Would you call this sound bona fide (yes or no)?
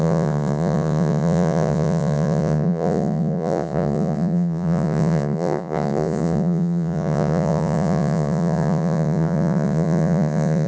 no